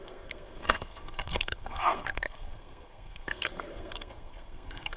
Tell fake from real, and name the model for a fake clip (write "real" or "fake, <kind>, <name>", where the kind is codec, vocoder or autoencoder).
fake, codec, SNAC